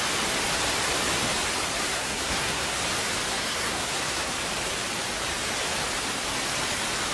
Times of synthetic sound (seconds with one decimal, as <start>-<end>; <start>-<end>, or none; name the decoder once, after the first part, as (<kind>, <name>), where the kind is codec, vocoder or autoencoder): 1.9-2.8 (codec, SNAC); 3.3-4.3